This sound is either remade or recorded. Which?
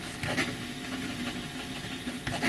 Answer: recorded